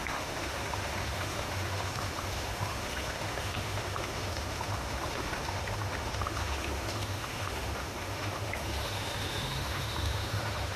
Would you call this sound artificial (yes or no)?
yes